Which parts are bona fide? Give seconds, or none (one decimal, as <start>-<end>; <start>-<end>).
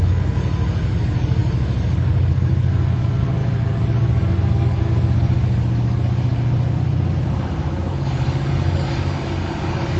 6.3-7.2